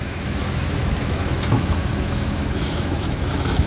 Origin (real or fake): fake